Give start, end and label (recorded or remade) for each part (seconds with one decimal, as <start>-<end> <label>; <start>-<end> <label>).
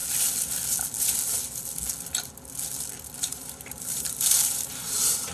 0.0-3.2 recorded; 3.2-5.3 remade